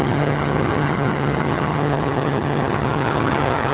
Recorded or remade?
remade